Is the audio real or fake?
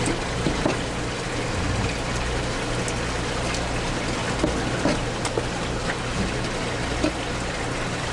real